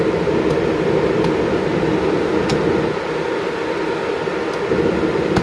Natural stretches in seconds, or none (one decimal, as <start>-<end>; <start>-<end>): 0.0-5.4